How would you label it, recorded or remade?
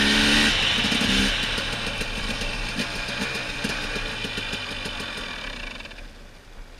recorded